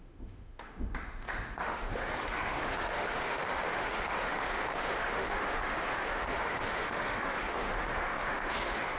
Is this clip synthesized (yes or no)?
yes